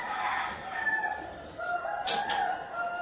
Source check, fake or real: fake